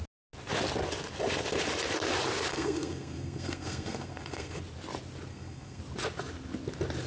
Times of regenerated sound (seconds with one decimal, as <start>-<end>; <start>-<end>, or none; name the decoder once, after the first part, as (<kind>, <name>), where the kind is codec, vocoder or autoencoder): 2.5-4.6 (codec, SNAC); 5.3-5.8